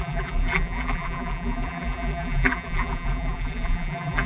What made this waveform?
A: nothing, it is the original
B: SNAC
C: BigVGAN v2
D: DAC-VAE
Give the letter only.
C